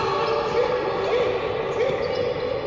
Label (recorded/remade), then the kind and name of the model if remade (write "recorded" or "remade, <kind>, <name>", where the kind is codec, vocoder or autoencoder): recorded